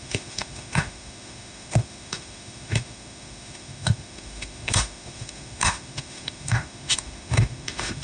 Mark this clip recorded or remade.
remade